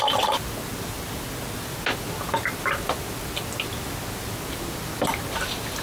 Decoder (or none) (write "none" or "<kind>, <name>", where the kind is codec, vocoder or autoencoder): none